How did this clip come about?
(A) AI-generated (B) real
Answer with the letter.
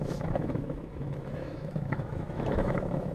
A